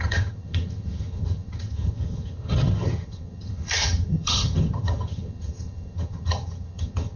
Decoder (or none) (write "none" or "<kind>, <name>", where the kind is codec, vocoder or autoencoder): vocoder, HiFi-GAN